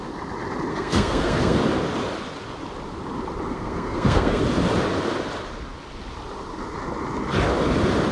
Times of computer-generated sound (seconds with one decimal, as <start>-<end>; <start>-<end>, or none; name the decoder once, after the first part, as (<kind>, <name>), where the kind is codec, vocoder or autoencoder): 0.7-1.6 (codec, SNAC); 3.5-4.4